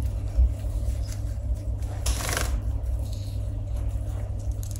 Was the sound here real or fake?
real